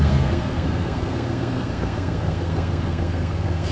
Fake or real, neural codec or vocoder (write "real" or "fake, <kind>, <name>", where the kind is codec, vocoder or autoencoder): fake, codec, SNAC